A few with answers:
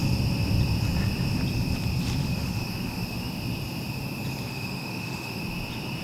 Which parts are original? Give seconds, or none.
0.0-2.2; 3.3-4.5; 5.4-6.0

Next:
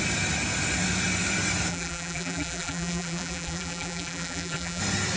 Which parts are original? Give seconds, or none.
0.0-1.7; 4.8-5.2

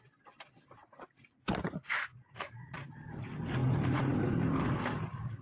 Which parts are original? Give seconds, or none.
0.0-0.8; 2.9-5.4